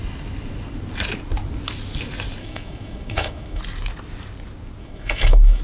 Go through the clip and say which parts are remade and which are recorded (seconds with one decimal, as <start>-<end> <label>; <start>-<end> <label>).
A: 0.0-2.4 recorded; 2.4-3.6 remade; 3.6-4.8 recorded; 4.8-5.6 remade